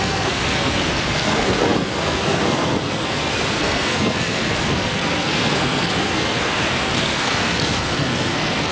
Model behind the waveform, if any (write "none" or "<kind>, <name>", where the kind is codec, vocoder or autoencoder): codec, SNAC